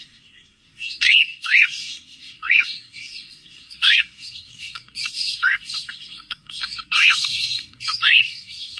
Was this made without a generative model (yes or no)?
no